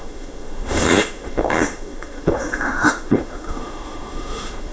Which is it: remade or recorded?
remade